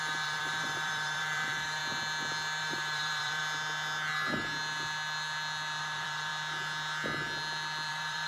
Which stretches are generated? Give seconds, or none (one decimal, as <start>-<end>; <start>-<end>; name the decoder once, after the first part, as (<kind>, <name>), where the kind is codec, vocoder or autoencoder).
0.0-1.8 (vocoder, BigVGAN v2); 2.6-3.4; 5.8-6.3; 7.9-8.3